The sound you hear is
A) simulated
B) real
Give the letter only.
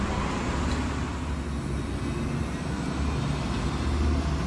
B